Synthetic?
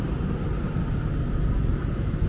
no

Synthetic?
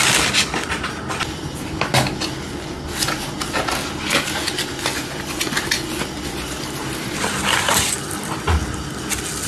no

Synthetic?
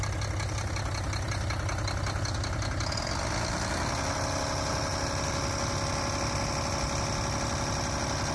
no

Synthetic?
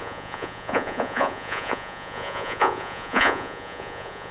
yes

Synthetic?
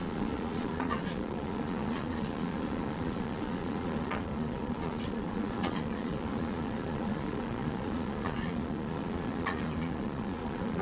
yes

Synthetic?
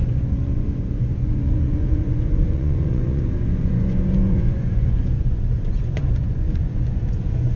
yes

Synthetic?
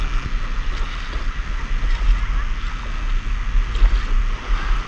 no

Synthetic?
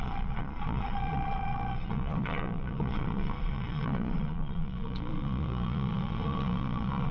yes